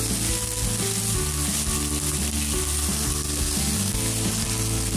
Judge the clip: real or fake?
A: real